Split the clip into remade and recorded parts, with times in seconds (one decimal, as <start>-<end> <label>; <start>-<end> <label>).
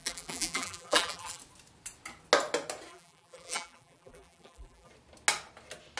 0.0-1.4 remade; 1.4-2.9 recorded; 2.9-4.9 remade; 4.9-6.0 recorded